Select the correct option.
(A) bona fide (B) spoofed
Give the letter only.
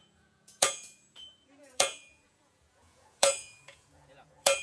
B